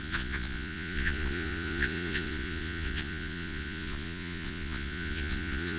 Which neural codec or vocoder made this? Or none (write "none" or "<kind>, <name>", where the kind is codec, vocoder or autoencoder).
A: vocoder, Vocos